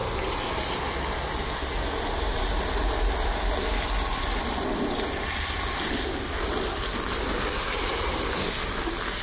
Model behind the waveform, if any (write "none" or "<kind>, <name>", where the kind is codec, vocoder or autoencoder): none